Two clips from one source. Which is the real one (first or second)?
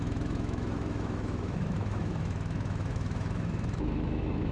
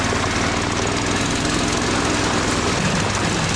second